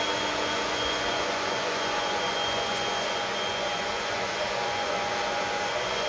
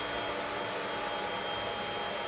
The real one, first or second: second